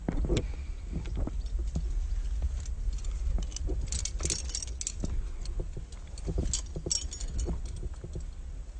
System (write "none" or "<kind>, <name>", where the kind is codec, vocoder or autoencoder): none